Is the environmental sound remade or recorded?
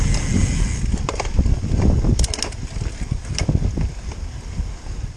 recorded